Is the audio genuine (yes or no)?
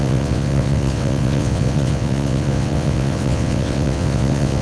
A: no